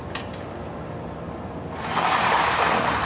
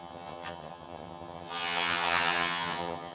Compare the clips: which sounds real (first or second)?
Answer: first